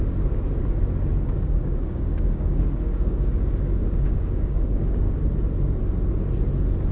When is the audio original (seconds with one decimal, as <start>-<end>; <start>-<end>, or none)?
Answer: 0.0-1.1; 5.2-6.9